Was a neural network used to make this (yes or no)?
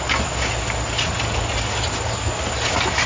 no